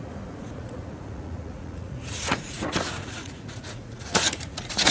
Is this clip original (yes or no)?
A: no